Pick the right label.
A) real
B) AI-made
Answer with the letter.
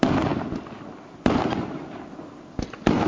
A